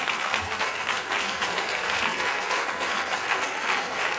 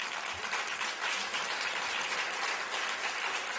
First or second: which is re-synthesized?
first